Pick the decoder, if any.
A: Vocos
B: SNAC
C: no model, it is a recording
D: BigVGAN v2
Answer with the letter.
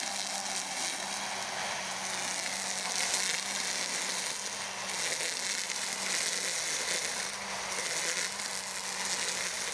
C